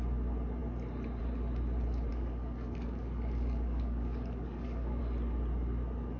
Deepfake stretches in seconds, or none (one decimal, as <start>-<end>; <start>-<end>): 2.1-5.0